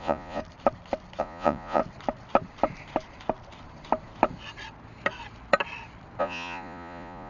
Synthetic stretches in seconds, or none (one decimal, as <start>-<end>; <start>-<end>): 0.0-0.4; 1.2-1.8; 6.2-7.3